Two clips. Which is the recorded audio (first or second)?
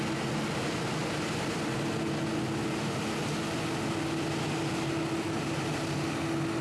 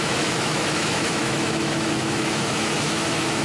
first